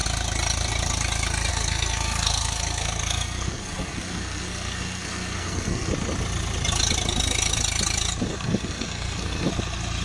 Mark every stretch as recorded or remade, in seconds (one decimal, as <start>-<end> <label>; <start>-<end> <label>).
0.0-1.5 recorded; 1.5-5.9 remade; 5.9-8.3 recorded; 8.3-9.5 remade; 9.5-10.0 recorded